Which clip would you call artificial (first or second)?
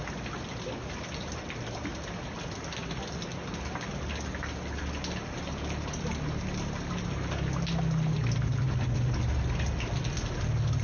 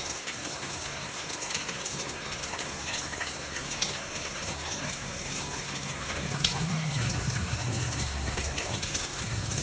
second